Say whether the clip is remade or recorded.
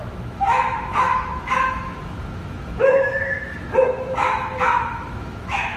remade